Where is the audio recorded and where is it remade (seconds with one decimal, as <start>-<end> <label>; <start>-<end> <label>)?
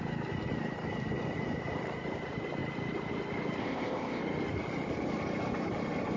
0.0-3.6 recorded; 3.6-4.2 remade; 4.2-6.2 recorded